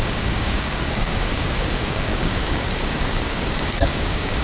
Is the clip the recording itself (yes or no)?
no